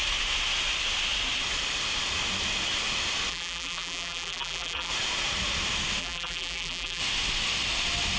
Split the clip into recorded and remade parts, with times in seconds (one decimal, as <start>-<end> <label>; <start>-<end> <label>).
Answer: 0.0-3.3 recorded; 3.3-4.9 remade; 4.9-6.0 recorded; 6.0-7.0 remade; 7.0-8.2 recorded